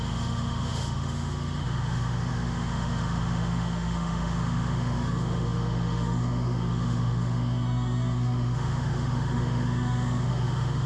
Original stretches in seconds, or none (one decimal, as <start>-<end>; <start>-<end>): none